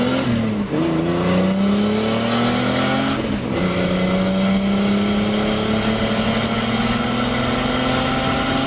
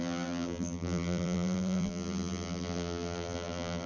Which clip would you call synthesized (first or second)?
second